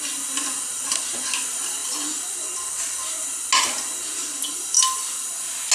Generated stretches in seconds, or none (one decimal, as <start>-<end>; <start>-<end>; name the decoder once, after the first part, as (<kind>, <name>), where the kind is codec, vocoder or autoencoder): none